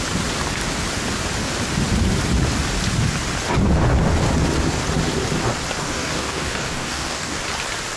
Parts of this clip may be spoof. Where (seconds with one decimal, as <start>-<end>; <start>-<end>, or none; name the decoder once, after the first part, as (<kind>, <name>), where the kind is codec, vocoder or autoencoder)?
5.8-7.4 (codec, DAC)